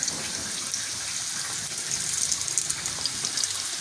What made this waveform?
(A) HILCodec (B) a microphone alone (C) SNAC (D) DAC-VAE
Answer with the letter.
B